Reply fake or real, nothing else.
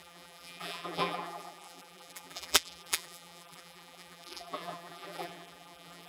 fake